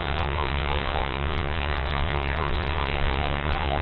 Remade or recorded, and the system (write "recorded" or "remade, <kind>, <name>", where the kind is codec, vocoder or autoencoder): remade, vocoder, WaveNeXt